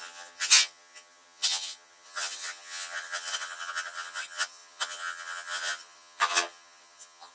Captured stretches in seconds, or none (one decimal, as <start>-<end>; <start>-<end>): none